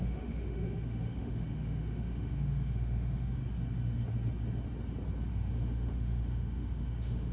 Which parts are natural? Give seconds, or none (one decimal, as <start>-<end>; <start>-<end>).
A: 3.4-5.3